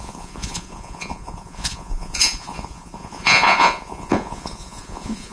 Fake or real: fake